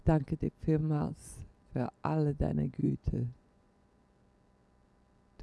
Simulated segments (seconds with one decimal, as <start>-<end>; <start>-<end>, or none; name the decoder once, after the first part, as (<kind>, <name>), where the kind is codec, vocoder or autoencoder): 0.8-1.3 (vocoder, Vocos); 2.8-4.0